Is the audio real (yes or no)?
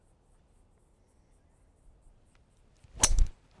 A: yes